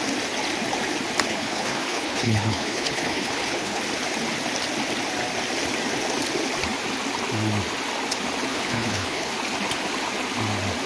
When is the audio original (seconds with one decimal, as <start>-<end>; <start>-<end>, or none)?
0.0-1.3; 3.8-8.5; 9.3-10.9